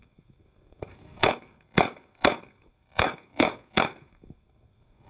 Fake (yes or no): yes